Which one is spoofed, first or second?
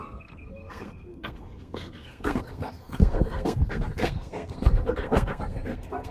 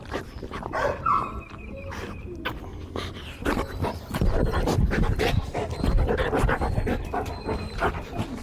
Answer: first